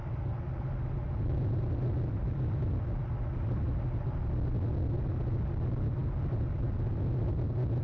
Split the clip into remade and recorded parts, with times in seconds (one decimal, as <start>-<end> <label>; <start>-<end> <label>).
0.0-7.8 recorded